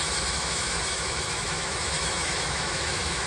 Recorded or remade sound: remade